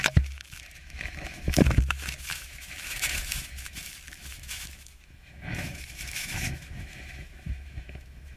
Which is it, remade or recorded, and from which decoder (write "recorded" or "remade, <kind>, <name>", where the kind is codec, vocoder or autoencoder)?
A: remade, autoencoder, DAC-VAE